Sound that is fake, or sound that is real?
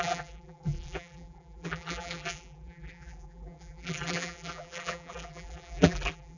fake